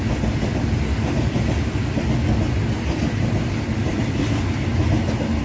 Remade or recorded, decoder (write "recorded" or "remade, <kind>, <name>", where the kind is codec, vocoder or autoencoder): recorded